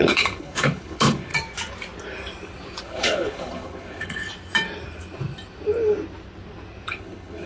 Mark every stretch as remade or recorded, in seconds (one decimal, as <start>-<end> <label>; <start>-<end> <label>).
0.0-1.3 remade; 1.3-2.8 recorded; 2.8-4.3 remade; 4.3-6.9 recorded; 6.9-7.5 remade